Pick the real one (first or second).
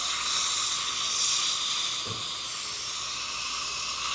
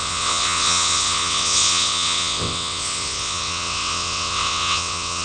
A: first